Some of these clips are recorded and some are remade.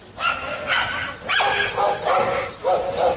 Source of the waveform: recorded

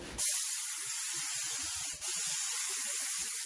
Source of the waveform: recorded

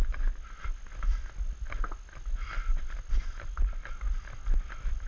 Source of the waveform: recorded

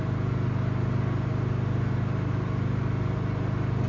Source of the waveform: recorded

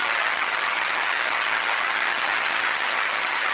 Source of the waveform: remade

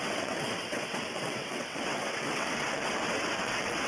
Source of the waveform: remade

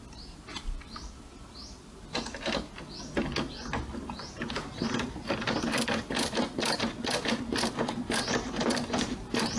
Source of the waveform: recorded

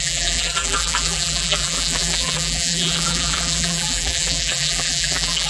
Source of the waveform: remade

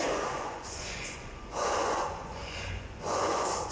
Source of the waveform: remade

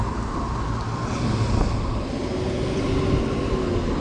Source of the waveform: recorded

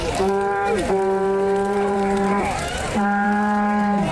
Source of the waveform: remade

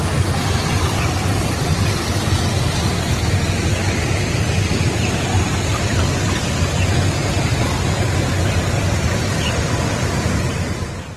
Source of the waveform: recorded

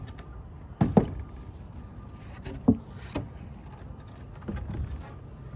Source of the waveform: recorded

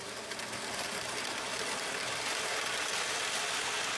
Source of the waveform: recorded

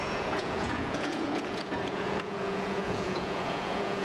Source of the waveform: remade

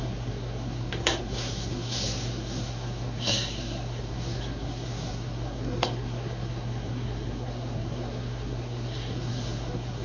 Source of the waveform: remade